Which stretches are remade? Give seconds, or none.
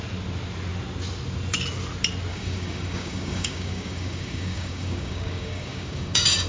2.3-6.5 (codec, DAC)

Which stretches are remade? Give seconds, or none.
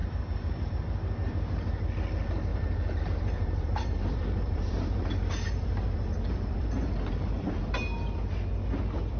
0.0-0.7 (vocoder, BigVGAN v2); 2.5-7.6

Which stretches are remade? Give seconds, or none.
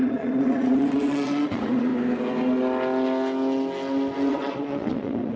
0.0-1.9 (vocoder, Vocos); 4.3-5.4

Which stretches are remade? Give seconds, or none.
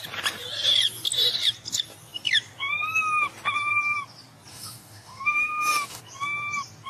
4.5-6.0 (autoencoder, DAC-VAE)